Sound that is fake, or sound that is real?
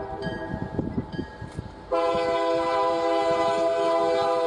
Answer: fake